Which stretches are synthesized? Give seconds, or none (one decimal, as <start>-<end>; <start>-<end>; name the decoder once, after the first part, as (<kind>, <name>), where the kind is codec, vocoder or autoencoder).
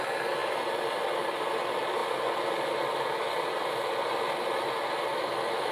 none